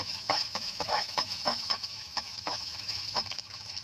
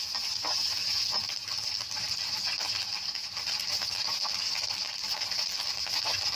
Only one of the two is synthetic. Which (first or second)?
first